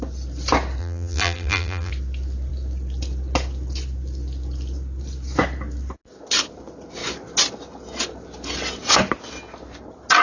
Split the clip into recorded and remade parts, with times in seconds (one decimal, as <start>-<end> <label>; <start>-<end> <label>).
0.0-0.8 recorded; 0.8-1.9 remade; 1.9-10.2 recorded